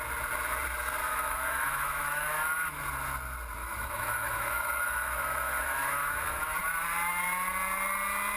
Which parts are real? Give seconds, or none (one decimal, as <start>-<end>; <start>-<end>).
0.0-1.0; 2.8-3.6; 6.6-8.4